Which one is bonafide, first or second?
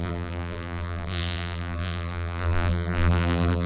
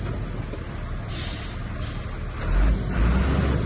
second